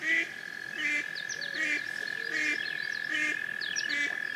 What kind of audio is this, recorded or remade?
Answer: recorded